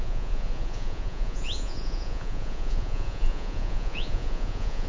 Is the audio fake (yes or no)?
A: yes